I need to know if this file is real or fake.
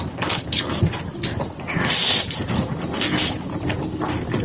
real